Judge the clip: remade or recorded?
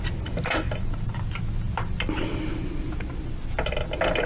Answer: recorded